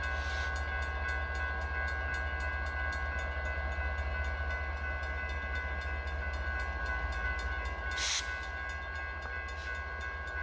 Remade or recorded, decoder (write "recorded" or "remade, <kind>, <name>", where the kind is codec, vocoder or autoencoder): recorded